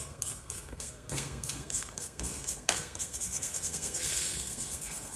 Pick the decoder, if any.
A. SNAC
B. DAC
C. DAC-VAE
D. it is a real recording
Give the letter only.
A